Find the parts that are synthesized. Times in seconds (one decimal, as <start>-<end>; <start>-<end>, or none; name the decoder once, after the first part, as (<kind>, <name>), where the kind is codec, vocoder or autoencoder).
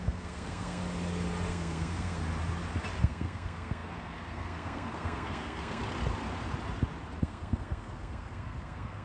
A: 0.0-0.8 (codec, SNAC); 1.5-2.2; 3.0-5.8; 7.2-9.0